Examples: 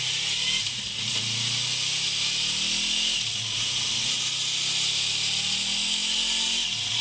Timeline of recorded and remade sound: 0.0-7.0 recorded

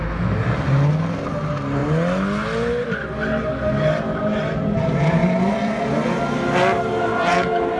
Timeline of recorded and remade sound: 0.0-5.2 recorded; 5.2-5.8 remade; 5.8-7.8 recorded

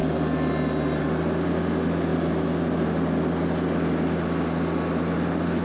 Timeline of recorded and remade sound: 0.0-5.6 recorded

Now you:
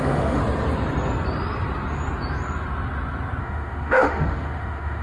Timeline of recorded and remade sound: 0.0-0.4 remade; 0.4-3.4 recorded; 3.4-5.0 remade

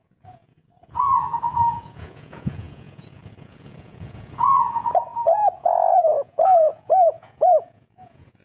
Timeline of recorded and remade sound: 0.0-8.4 remade